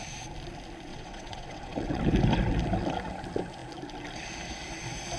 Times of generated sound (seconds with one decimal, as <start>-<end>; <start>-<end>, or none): 0.9-2.0